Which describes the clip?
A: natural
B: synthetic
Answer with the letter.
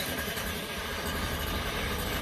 A